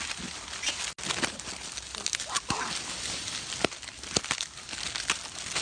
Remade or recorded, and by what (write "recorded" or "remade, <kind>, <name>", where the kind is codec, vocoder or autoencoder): recorded